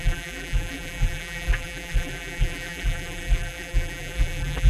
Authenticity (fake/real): fake